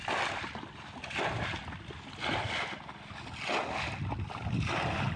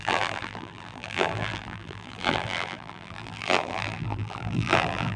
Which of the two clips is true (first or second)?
first